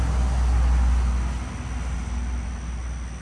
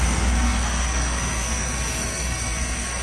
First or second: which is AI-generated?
second